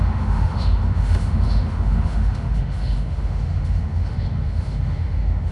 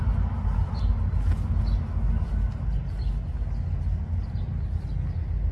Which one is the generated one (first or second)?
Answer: first